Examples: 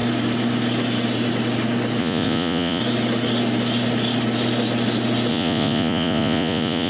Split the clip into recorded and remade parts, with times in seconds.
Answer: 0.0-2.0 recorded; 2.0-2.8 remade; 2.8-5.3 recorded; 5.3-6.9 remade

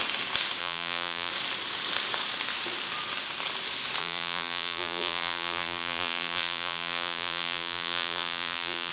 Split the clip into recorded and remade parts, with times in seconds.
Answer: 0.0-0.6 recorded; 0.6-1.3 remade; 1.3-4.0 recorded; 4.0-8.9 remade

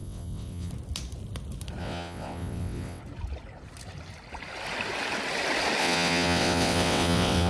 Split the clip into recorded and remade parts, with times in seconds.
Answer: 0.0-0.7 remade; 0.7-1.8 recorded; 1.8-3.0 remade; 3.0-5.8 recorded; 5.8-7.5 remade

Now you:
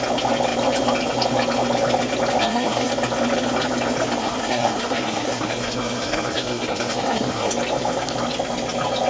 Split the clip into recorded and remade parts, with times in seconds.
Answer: 0.0-2.4 recorded; 2.4-2.9 remade; 2.9-4.2 recorded; 4.2-7.5 remade; 7.5-9.1 recorded

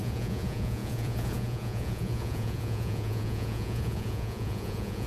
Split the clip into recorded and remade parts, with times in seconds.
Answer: 0.0-5.1 remade

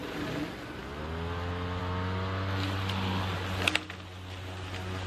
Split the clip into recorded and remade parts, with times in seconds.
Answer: 0.0-5.1 recorded

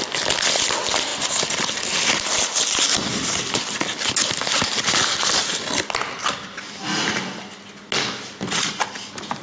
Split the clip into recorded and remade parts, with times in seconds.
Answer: 0.0-9.4 recorded